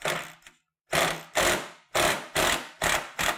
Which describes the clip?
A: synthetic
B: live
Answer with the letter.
B